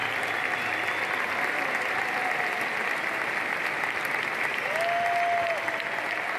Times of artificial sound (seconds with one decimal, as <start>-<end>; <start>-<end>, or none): 0.0-1.9